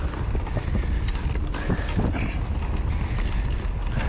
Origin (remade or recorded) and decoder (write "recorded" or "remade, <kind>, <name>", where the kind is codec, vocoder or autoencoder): recorded